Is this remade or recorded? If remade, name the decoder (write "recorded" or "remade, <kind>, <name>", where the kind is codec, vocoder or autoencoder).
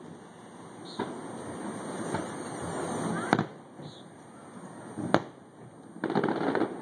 recorded